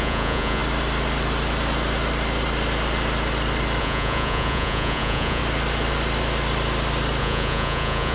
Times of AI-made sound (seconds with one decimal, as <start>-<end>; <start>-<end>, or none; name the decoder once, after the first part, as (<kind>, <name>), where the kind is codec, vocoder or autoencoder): 0.0-0.6 (vocoder, Vocos); 3.8-5.4; 7.2-8.1